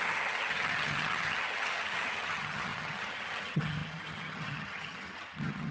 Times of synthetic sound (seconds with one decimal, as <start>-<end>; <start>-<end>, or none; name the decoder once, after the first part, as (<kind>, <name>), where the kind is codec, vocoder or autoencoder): 0.0-5.7 (vocoder, HiFi-GAN)